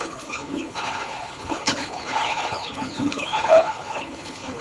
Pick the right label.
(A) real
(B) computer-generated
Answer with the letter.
B